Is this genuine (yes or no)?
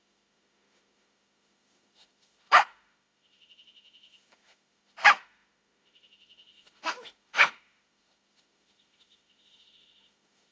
no